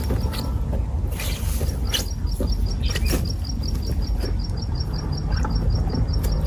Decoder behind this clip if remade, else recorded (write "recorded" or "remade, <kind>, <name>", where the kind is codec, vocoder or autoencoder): recorded